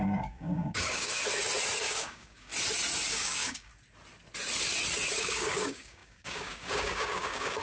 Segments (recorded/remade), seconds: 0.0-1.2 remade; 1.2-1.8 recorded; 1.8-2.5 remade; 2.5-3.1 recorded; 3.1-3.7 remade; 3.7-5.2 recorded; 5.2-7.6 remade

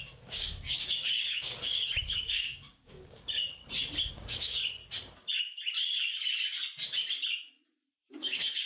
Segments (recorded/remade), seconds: 0.0-3.6 remade; 3.6-4.1 recorded; 4.1-4.8 remade; 4.8-8.1 recorded; 8.1-8.7 remade

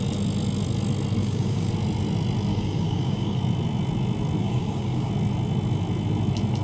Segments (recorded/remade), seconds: 0.0-1.2 recorded; 1.2-1.7 remade; 1.7-2.5 recorded; 2.5-3.4 remade; 3.4-4.4 recorded; 4.4-5.1 remade; 5.1-6.6 recorded

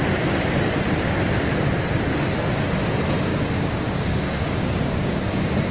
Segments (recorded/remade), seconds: 0.0-0.7 remade; 0.7-3.3 recorded; 3.3-5.7 remade

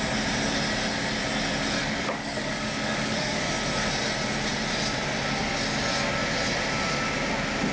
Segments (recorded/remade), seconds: 0.0-1.8 recorded; 1.8-3.5 remade; 3.5-7.7 recorded